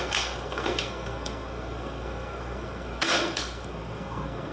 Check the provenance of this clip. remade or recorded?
remade